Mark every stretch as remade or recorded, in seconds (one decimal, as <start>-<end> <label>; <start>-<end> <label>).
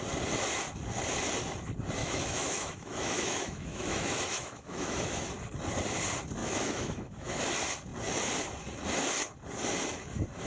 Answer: 0.0-2.0 recorded; 2.0-5.2 remade; 5.2-6.4 recorded; 6.4-7.4 remade; 7.4-10.5 recorded